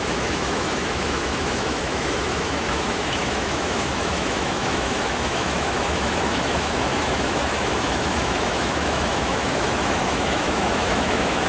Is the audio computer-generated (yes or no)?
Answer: yes